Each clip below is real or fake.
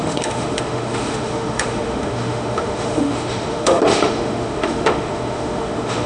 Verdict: fake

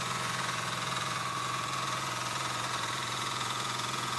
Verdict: fake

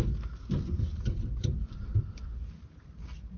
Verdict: real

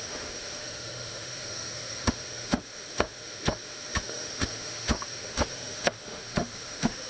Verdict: fake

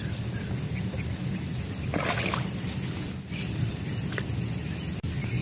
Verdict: real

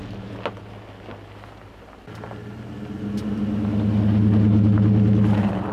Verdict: real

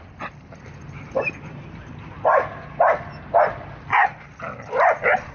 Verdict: real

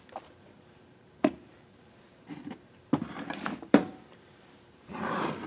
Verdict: fake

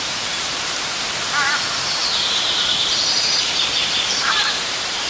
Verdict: fake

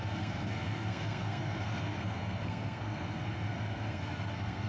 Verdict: fake